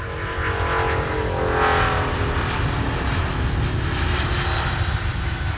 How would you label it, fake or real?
real